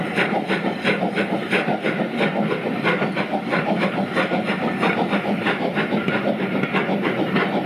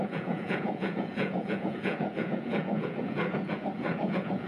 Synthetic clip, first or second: second